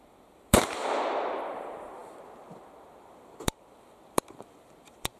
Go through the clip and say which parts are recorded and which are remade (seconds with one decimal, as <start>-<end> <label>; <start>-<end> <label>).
0.0-5.2 remade